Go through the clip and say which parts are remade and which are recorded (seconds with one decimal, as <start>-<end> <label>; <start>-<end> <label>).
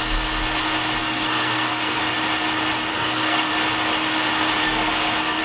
0.0-1.0 recorded; 1.0-2.0 remade; 2.0-2.9 recorded; 2.9-3.5 remade; 3.5-4.6 recorded; 4.6-5.4 remade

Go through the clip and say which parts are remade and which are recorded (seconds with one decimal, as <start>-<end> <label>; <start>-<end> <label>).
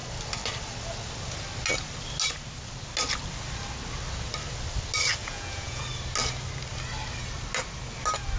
0.0-5.2 recorded; 5.2-5.8 remade; 5.8-8.4 recorded